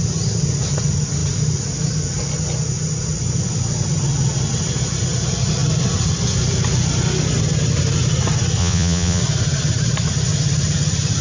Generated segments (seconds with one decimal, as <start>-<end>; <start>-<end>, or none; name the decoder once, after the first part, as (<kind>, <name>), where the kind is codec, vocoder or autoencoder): 8.6-9.2 (vocoder, Vocos)